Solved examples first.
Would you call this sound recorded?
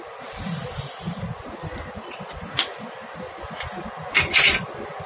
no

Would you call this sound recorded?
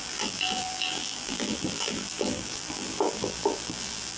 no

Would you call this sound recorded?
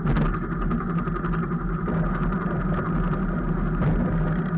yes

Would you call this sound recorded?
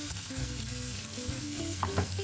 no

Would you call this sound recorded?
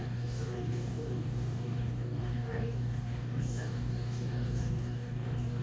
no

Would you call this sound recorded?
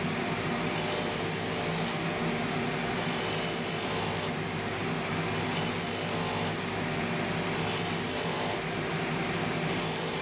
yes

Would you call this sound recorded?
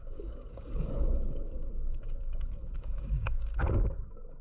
no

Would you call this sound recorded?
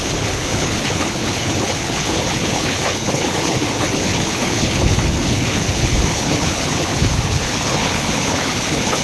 no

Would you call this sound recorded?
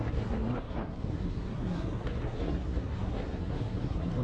no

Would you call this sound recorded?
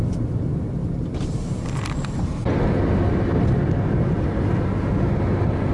yes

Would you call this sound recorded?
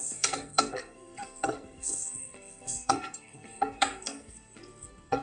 no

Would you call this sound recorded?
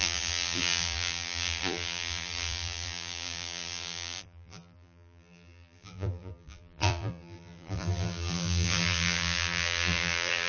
no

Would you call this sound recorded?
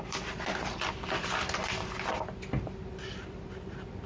no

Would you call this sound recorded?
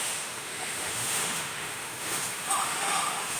no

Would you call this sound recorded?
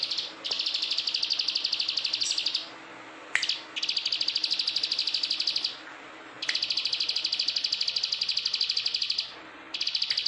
yes